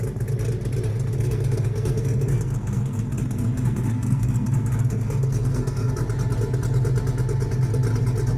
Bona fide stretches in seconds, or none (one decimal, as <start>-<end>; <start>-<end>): 0.0-0.9; 5.9-8.4